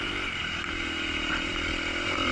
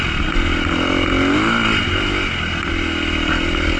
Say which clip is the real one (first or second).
second